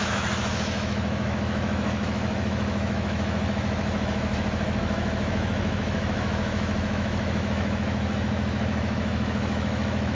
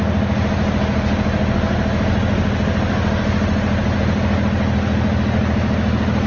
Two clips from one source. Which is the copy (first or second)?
first